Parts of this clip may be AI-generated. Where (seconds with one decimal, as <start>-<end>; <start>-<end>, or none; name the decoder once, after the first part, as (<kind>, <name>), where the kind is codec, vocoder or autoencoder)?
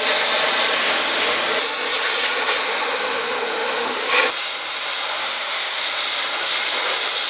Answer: 0.8-1.4 (autoencoder, DAC-VAE); 2.6-4.1; 5.2-5.8